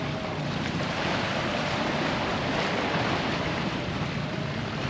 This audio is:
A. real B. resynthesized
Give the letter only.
A